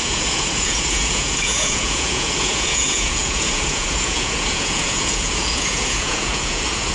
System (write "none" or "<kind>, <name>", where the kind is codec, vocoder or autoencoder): vocoder, Vocos